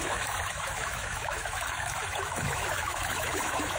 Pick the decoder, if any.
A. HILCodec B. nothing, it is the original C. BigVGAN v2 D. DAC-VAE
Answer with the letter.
D